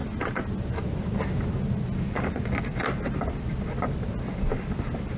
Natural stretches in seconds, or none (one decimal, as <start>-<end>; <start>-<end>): 0.0-5.2